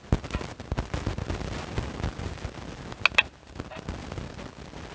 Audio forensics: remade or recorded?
recorded